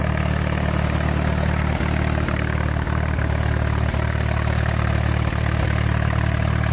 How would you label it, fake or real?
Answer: real